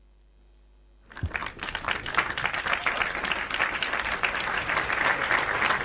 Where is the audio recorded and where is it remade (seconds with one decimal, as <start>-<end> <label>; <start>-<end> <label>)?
0.0-5.8 recorded